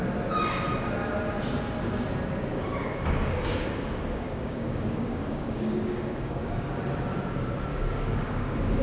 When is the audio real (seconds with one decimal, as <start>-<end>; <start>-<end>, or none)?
0.0-2.5; 6.8-7.7